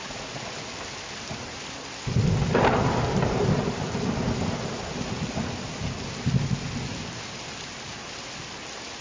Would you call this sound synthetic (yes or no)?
no